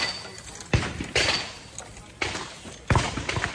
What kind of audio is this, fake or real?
real